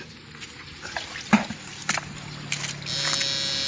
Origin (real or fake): real